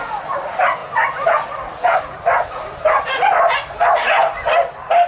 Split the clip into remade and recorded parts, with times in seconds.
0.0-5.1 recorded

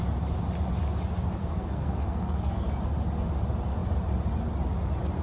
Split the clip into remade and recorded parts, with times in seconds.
0.0-1.4 recorded; 1.4-2.7 remade; 2.7-5.2 recorded

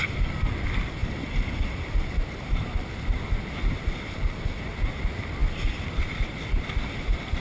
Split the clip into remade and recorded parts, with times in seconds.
0.0-7.4 recorded